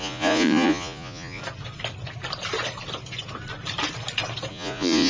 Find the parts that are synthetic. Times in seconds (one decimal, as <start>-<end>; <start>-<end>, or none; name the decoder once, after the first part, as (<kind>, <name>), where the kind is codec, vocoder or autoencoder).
0.0-1.4 (vocoder, Vocos); 4.5-5.1